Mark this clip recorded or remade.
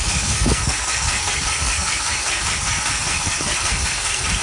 remade